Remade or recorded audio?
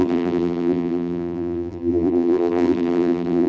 remade